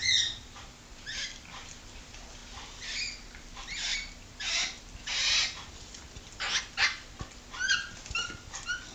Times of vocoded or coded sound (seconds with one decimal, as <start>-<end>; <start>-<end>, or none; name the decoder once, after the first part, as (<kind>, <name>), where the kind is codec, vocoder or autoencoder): none